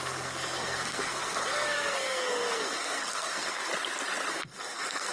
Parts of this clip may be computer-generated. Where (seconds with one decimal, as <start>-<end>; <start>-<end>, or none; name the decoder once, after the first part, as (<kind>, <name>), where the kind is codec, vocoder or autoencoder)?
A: 0.0-3.7 (codec, SNAC); 4.3-5.1